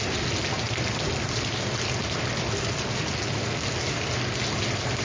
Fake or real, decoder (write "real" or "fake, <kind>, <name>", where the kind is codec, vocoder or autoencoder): real